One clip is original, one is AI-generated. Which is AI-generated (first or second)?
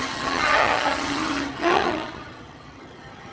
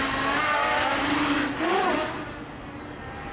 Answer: first